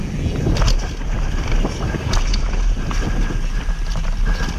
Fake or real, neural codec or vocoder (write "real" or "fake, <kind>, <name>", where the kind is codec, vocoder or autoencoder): real